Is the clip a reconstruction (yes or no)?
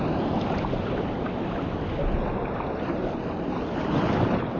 no